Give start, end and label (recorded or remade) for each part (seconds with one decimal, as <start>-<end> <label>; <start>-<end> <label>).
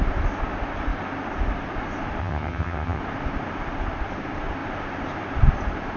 0.0-2.2 recorded; 2.2-3.0 remade; 3.0-6.0 recorded